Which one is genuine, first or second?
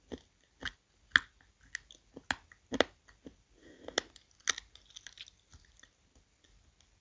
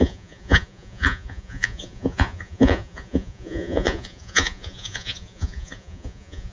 first